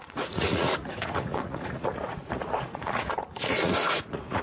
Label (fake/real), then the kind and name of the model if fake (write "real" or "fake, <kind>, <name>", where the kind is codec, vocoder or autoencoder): fake, vocoder, Vocos